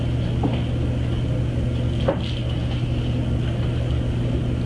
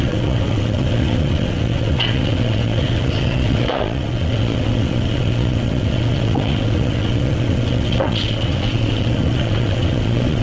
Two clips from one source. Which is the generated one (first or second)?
second